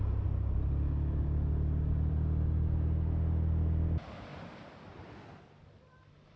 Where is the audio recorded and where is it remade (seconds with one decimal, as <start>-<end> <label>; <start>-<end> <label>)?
0.0-4.3 recorded; 4.3-5.2 remade; 5.2-6.4 recorded